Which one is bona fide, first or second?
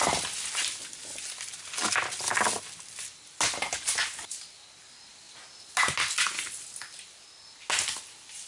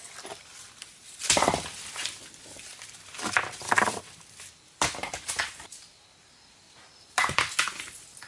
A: first